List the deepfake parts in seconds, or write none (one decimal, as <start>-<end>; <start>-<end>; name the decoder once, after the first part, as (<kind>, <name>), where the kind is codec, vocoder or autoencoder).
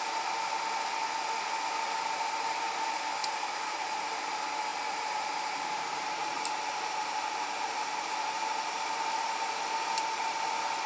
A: 3.2-4.3 (vocoder, BigVGAN v2); 4.7-9.7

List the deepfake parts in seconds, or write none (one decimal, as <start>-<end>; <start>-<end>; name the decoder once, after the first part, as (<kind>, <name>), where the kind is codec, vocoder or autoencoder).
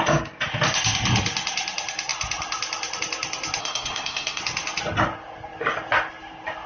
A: 3.6-4.4 (codec, SNAC)